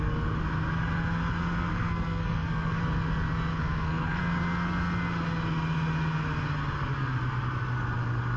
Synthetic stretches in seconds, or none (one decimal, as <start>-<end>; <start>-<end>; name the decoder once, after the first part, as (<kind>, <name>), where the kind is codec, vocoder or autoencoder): 1.7-2.8 (codec, SNAC); 3.5-4.2